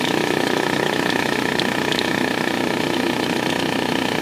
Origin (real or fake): fake